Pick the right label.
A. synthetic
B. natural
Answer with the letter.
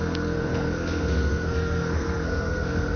A